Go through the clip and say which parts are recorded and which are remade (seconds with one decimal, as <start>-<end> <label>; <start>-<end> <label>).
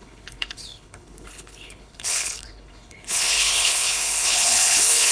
0.0-5.1 remade